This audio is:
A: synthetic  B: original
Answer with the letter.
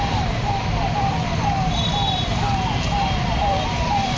A